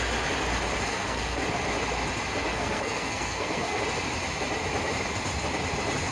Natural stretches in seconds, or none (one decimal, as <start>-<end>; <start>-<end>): 0.0-0.9; 1.4-2.5; 3.8-6.1